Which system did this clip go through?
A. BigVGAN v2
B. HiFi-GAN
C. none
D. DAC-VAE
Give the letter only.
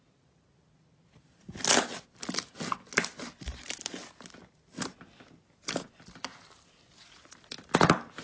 C